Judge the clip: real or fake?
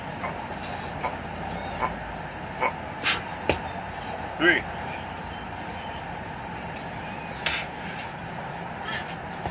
real